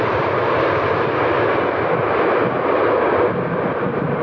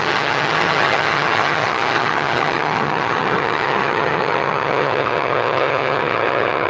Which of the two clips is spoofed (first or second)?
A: second